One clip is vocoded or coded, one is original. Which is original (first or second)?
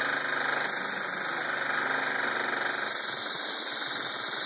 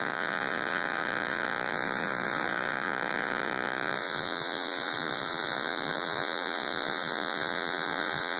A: first